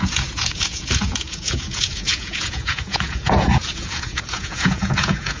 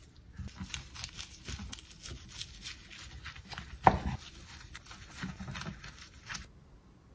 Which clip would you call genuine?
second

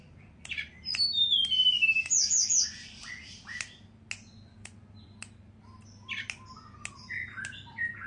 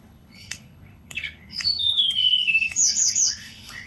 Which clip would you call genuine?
first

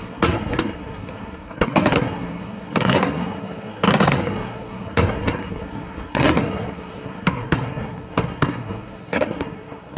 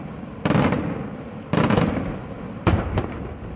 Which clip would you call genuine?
second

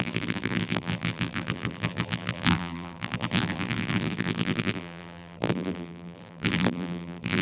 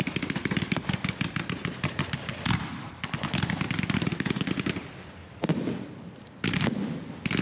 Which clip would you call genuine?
second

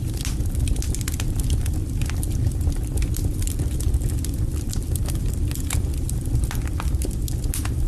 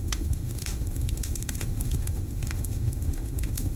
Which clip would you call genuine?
first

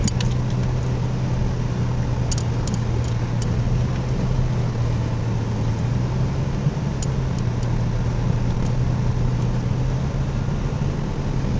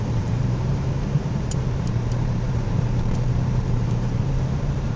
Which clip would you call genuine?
first